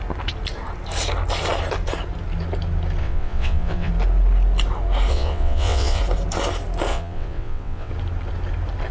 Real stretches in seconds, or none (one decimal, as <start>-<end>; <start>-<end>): 0.0-3.0; 3.9-5.1; 6.0-6.9; 7.9-8.9